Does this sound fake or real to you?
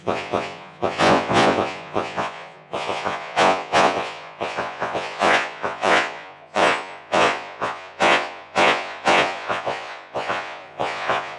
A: fake